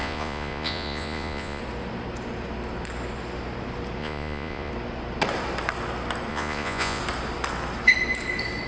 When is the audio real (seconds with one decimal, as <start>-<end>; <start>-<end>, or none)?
1.6-4.0; 4.7-6.3; 7.0-8.7